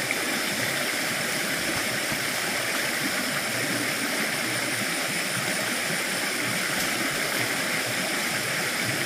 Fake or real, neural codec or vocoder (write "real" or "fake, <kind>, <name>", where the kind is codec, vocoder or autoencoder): real